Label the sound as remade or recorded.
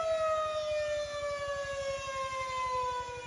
recorded